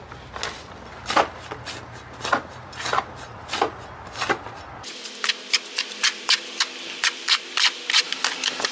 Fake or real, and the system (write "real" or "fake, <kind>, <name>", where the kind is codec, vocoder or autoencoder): real